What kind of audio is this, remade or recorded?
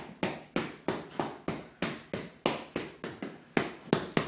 recorded